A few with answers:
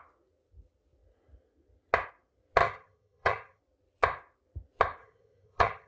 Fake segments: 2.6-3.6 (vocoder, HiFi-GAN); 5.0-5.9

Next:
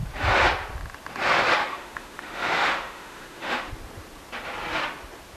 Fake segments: 1.6-3.7 (autoencoder, DAC-VAE)